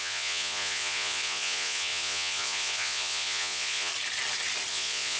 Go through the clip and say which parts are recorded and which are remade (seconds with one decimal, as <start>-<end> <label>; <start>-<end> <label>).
0.0-3.9 remade; 3.9-4.7 recorded; 4.7-5.2 remade